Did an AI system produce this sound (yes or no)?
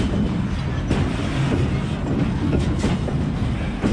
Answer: no